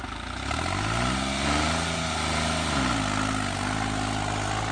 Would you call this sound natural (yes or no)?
yes